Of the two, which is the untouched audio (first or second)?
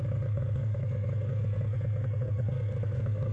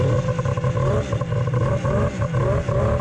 second